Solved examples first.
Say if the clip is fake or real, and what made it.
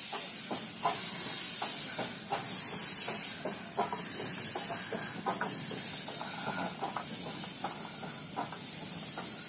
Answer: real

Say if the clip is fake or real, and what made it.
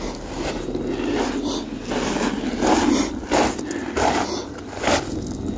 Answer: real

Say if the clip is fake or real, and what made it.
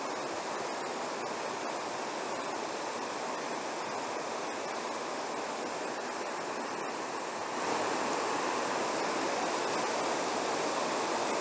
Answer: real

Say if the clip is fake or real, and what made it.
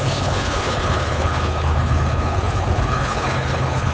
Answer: fake, codec, HILCodec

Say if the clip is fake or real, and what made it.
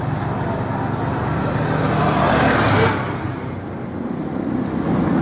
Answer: real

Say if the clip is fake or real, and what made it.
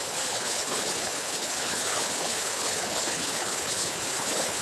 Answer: fake, codec, HILCodec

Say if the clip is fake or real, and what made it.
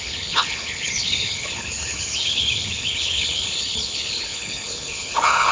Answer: fake, codec, HILCodec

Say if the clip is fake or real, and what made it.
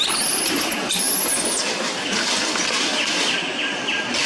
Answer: real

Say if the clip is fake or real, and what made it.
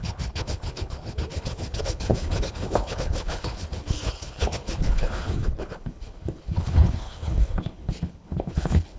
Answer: fake, codec, HILCodec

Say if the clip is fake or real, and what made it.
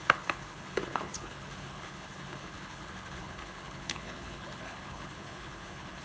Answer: fake, codec, HILCodec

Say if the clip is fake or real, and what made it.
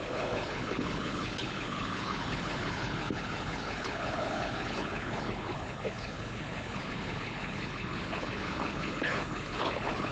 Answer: fake, codec, HILCodec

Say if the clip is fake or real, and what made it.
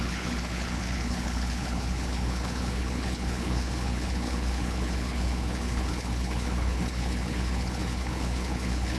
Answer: fake, codec, HILCodec